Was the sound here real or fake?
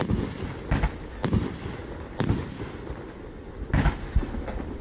real